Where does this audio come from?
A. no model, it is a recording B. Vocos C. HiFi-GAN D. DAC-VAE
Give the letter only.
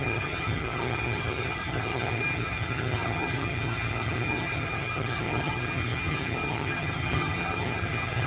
C